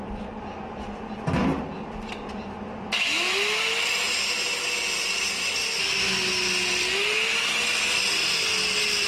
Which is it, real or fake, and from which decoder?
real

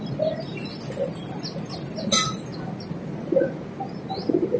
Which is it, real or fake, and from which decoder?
real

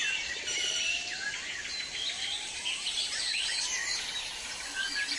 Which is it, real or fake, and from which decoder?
fake, vocoder, BigVGAN v2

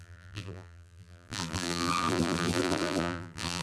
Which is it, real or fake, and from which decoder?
fake, vocoder, BigVGAN v2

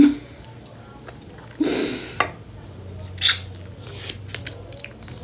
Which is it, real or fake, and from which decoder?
real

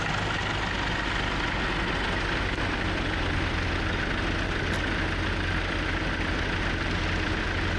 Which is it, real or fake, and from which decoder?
real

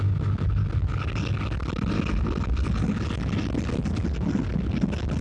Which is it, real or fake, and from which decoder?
real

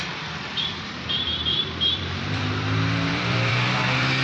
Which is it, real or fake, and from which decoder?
fake, vocoder, BigVGAN v2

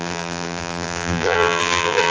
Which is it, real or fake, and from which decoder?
fake, vocoder, BigVGAN v2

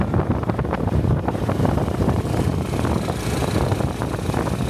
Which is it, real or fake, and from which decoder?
real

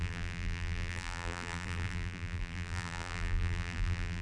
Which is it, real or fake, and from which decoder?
fake, vocoder, BigVGAN v2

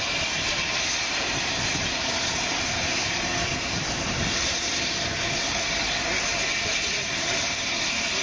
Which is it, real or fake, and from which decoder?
fake, vocoder, BigVGAN v2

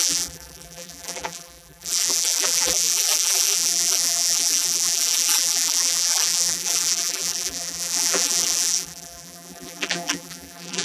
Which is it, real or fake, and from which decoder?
fake, vocoder, BigVGAN v2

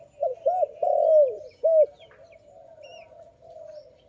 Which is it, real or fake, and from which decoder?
real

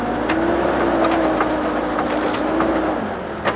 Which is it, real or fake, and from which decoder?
real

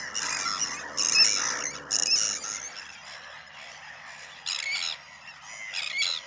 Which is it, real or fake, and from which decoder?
real